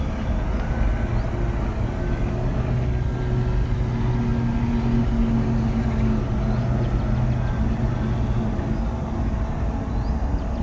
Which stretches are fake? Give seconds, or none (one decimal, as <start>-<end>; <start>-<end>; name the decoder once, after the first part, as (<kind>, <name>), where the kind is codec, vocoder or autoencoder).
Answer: none